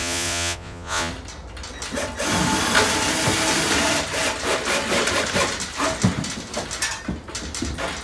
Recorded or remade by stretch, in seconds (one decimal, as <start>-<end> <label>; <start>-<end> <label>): 0.0-1.1 remade; 1.1-8.0 recorded